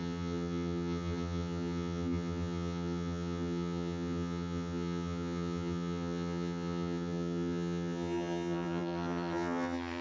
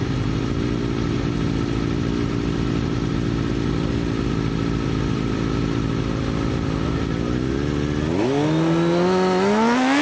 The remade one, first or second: first